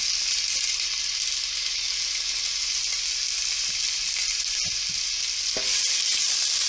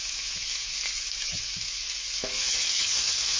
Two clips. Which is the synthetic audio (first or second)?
second